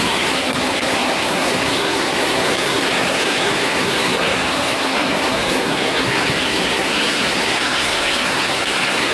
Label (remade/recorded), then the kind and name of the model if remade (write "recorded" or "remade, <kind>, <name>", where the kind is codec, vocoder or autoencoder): remade, codec, SNAC